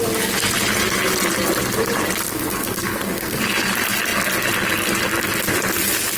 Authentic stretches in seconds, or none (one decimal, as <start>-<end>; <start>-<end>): 0.0-2.3; 3.4-6.2